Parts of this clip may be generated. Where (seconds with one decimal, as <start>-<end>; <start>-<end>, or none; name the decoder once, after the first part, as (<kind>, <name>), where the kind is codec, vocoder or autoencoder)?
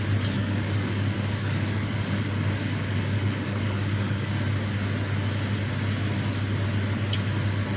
0.4-4.3 (codec, DAC)